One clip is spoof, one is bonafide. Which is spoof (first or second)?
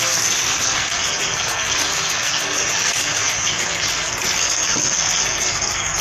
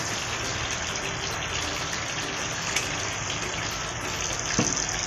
first